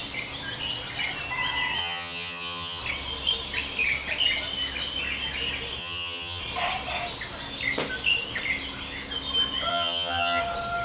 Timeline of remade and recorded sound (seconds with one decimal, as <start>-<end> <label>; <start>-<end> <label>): 0.0-1.8 recorded; 1.8-2.8 remade; 2.8-5.8 recorded; 5.8-6.4 remade; 6.4-9.7 recorded; 9.7-10.4 remade; 10.4-10.8 recorded